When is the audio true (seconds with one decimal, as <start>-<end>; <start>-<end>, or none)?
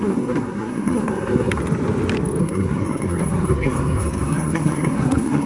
1.6-2.4